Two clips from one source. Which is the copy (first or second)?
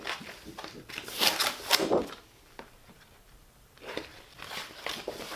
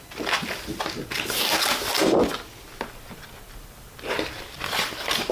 first